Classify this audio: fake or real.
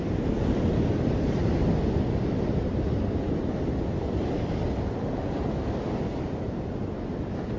real